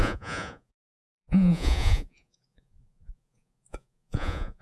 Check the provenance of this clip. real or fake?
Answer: fake